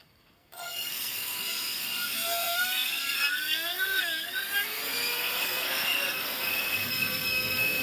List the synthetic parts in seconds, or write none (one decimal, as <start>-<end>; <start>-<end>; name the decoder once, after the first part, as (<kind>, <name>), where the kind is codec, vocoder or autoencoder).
0.0-7.8 (codec, SNAC)

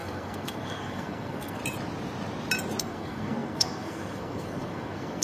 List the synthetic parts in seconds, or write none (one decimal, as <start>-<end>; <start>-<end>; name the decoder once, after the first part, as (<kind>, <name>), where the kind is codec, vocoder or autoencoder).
0.0-1.6 (codec, SNAC); 2.8-5.2

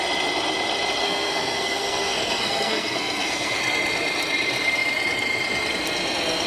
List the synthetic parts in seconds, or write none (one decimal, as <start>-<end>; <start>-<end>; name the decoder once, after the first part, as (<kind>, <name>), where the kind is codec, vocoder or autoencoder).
1.0-3.6 (codec, SNAC)

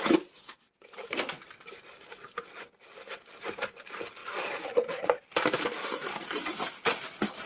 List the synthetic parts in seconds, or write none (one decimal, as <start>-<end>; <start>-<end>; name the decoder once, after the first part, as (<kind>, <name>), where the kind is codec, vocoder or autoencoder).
none

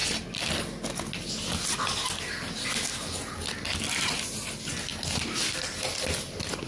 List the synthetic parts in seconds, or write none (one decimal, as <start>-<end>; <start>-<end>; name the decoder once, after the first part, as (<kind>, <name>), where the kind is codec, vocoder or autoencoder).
none

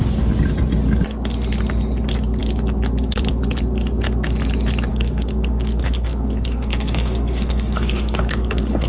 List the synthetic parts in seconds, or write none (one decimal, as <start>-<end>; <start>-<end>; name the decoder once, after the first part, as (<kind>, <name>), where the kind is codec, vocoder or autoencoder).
4.9-8.9 (codec, SNAC)

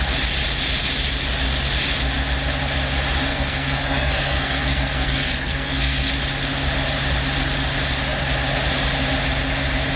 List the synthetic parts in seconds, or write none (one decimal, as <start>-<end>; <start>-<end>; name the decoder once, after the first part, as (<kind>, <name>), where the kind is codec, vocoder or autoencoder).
3.3-6.1 (codec, SNAC)